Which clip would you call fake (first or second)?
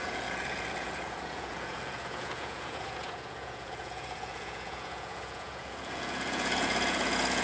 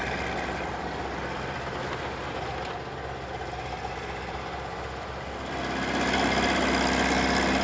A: first